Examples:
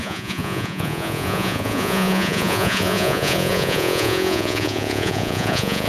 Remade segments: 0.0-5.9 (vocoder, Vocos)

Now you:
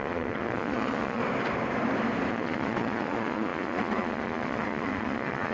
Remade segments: 0.0-1.2 (vocoder, Vocos); 2.3-5.5

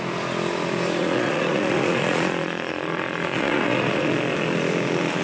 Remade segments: 1.0-4.1 (vocoder, Vocos)